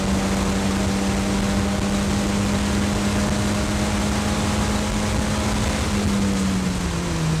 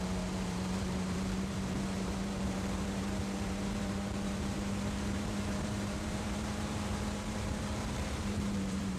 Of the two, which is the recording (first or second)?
first